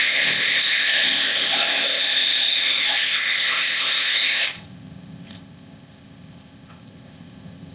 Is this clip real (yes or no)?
no